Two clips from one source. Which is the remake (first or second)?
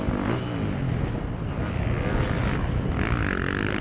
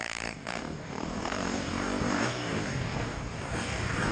second